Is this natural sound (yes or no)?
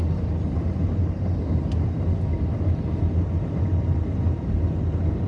yes